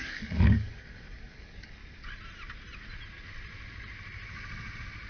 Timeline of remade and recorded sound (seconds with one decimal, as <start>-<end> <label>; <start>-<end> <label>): 0.0-1.8 remade; 1.8-5.1 recorded

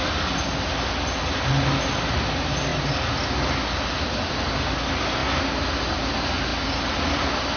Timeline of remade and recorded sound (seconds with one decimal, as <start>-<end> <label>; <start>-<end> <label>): 0.0-7.6 recorded

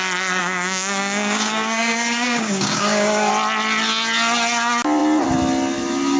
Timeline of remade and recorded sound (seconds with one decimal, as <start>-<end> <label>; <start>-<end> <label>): 0.0-0.4 recorded; 0.4-3.3 remade; 3.3-6.2 recorded

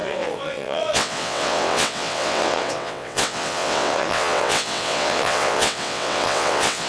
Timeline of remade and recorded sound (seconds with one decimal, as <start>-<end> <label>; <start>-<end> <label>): 0.0-6.9 remade

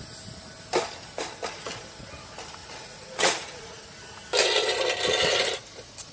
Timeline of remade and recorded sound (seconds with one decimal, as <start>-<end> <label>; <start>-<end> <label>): 0.0-2.6 recorded; 2.6-3.8 remade; 3.8-6.1 recorded

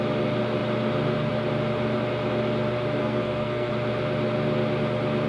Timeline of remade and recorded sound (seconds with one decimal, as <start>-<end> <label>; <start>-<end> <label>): 0.0-3.0 recorded; 3.0-3.7 remade; 3.7-5.3 recorded

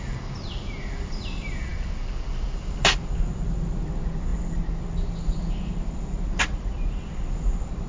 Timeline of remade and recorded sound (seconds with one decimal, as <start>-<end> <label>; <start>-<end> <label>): 0.0-7.9 recorded

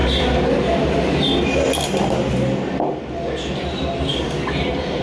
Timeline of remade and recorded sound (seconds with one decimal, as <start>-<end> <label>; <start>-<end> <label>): 0.0-5.0 recorded